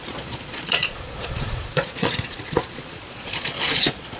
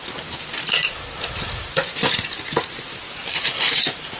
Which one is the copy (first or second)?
first